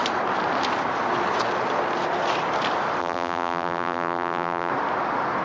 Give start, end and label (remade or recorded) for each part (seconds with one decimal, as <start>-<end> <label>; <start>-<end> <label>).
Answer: 0.0-3.0 recorded; 3.0-4.7 remade; 4.7-5.4 recorded